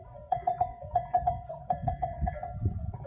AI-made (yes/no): yes